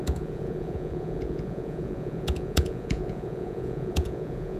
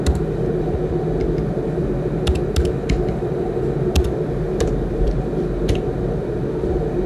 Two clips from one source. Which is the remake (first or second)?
first